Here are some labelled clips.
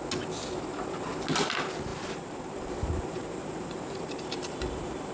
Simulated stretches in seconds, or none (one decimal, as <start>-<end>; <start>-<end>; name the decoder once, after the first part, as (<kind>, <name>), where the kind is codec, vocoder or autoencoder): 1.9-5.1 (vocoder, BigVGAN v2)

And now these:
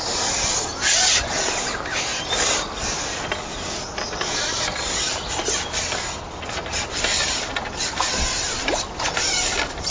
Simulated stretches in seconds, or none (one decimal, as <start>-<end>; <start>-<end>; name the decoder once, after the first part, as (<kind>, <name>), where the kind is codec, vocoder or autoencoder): 7.1-7.9 (vocoder, BigVGAN v2)

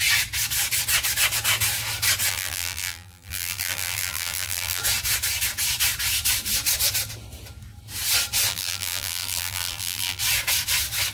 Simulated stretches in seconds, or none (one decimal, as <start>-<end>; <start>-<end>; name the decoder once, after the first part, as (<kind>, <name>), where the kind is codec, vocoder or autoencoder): 2.3-4.8 (vocoder, BigVGAN v2); 8.5-10.2

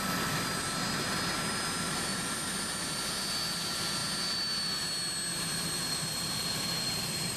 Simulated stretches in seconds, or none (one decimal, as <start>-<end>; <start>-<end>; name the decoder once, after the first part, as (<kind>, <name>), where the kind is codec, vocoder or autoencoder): 5.3-7.4 (vocoder, BigVGAN v2)